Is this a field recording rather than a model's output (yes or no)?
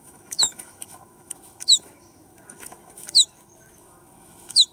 no